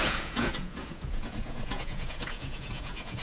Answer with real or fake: fake